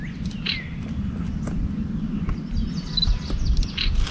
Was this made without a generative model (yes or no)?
yes